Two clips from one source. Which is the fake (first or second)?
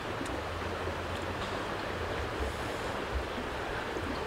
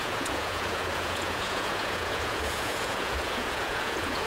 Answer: second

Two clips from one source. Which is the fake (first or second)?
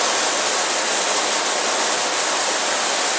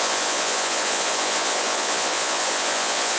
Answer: second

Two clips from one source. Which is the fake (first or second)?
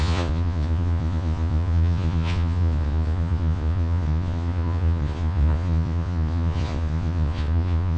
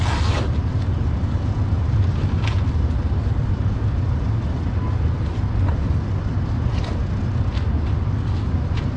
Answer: first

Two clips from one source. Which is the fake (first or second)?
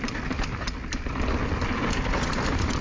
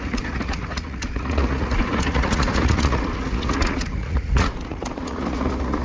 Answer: second